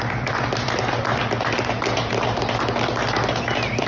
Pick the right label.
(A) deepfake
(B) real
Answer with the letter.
B